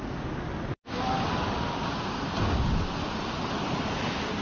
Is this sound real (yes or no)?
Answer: yes